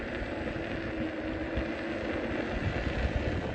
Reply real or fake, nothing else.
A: real